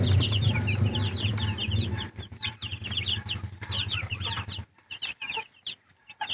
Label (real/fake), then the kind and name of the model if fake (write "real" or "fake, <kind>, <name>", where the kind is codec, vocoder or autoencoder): real